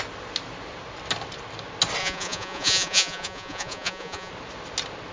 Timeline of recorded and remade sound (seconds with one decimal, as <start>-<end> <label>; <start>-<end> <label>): 0.0-2.0 recorded; 2.0-4.3 remade; 4.3-5.1 recorded